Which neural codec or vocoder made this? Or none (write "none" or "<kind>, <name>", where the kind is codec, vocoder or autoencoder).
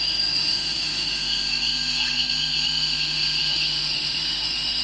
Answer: autoencoder, DAC-VAE